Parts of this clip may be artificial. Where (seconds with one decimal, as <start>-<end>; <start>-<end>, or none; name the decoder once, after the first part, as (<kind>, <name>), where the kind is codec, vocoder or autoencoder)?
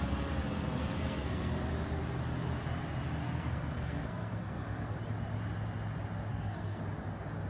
0.8-1.5 (codec, SNAC); 3.2-5.0; 6.3-6.8